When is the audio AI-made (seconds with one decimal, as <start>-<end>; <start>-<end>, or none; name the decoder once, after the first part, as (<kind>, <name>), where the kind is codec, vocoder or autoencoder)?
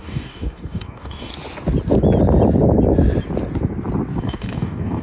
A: 0.0-1.3 (codec, DAC); 4.2-5.0